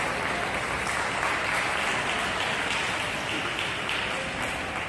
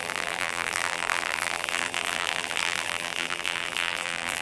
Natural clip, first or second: first